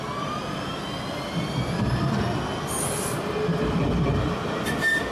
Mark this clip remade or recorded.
recorded